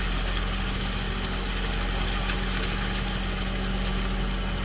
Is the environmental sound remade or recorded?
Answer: recorded